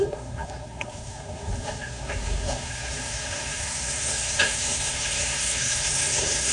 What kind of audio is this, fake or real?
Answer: fake